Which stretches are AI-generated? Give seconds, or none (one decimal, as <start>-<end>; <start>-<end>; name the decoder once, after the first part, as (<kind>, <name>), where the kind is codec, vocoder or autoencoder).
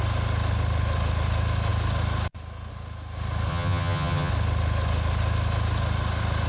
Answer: 3.5-4.3 (vocoder, HiFi-GAN)